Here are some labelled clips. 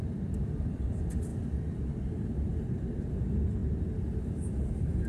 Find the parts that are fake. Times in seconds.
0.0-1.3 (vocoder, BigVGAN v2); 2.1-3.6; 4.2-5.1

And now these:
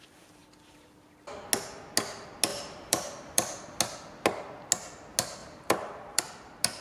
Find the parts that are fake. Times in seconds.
2.5-3.8 (vocoder, BigVGAN v2); 5.4-6.2

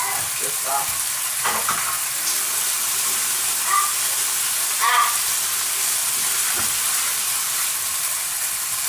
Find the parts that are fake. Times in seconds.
0.0-3.1 (vocoder, BigVGAN v2); 4.7-6.0; 7.2-8.9

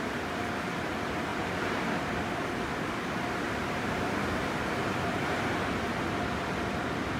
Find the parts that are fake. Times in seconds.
1.3-5.4 (vocoder, BigVGAN v2)

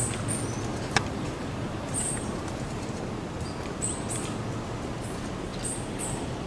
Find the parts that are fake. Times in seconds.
0.7-3.0 (vocoder, BigVGAN v2); 5.5-6.0

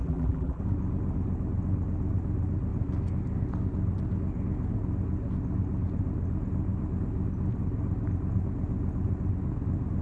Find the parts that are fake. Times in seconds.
0.0-0.6 (vocoder, BigVGAN v2)